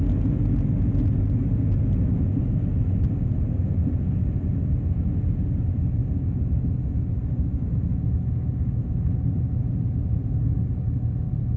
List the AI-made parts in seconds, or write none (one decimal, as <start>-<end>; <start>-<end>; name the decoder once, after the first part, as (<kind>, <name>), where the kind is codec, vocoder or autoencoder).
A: none